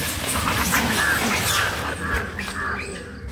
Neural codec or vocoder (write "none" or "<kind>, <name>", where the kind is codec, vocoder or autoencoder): none